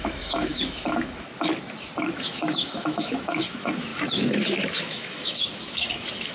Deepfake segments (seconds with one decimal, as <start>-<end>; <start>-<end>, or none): 0.0-1.5; 2.0-6.3